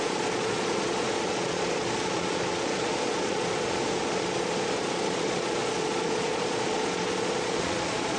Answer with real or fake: fake